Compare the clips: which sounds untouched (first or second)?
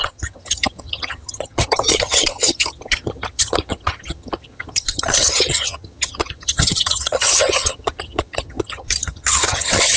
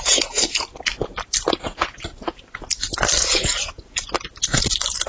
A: second